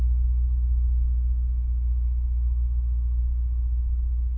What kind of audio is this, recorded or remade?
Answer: recorded